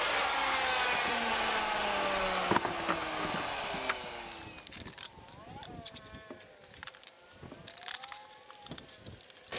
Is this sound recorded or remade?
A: recorded